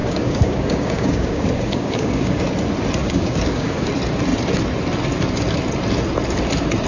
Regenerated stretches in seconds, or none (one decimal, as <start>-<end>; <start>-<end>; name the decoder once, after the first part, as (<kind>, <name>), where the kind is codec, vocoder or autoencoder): 0.0-2.4 (codec, DAC); 3.0-3.9